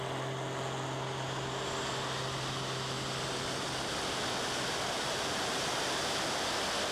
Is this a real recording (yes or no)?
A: yes